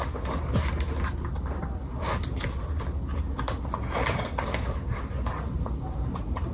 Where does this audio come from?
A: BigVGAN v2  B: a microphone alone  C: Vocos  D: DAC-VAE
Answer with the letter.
B